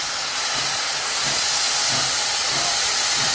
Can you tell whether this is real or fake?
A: real